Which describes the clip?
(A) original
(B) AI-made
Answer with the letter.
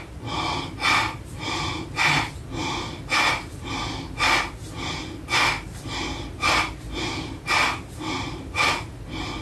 A